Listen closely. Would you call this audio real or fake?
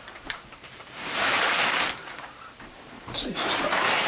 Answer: fake